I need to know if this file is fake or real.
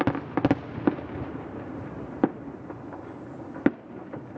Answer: real